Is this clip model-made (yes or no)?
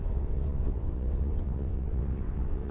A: yes